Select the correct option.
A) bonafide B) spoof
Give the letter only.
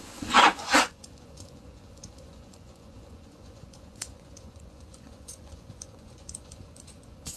B